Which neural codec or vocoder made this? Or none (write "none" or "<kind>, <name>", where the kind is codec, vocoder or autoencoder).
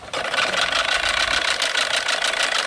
none